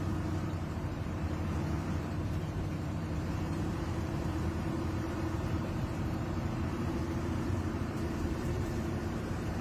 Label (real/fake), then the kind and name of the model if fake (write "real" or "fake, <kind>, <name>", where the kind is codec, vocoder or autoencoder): fake, vocoder, BigVGAN v2